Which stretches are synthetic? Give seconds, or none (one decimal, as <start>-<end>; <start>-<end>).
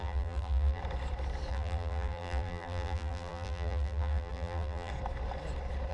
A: 0.0-0.8; 1.5-4.9